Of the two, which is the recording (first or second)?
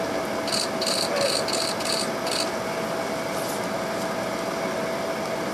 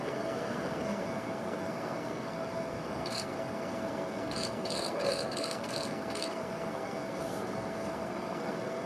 first